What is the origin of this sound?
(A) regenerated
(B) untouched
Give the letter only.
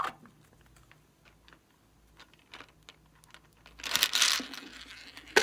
B